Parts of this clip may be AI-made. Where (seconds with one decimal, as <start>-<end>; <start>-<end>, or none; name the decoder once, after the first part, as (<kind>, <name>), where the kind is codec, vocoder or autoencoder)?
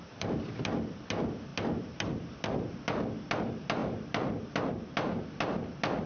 none